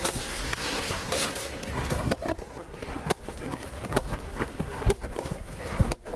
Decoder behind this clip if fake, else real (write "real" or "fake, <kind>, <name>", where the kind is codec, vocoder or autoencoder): fake, codec, SNAC